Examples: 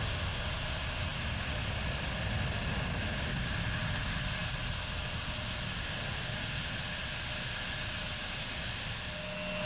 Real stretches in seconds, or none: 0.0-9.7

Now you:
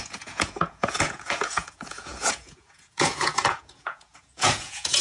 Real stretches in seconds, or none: none

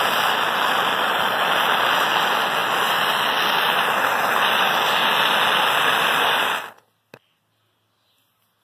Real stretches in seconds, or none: 0.0-8.6

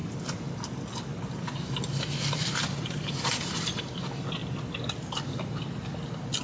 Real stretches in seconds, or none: 0.0-6.4

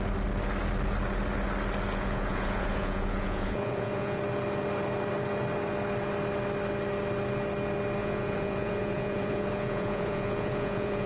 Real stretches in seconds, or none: 0.0-1.9; 4.2-8.0

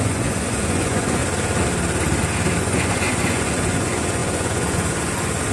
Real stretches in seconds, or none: 1.2-2.6

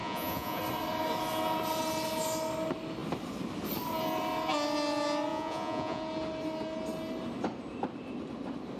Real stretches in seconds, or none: 0.6-5.3; 6.0-8.8